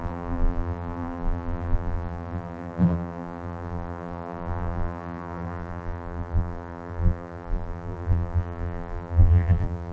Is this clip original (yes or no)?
no